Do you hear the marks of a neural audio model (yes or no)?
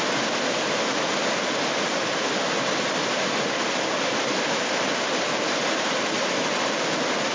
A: no